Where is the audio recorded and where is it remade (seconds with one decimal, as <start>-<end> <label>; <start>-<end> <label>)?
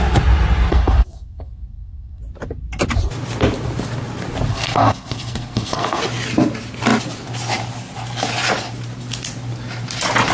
0.0-0.7 recorded; 0.7-2.2 remade; 2.2-4.5 recorded; 4.5-6.0 remade; 6.0-10.3 recorded